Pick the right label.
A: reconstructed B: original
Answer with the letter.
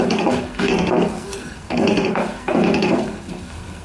A